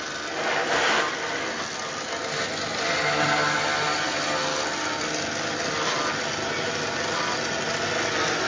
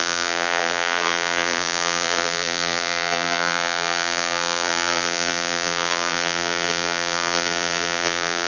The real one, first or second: first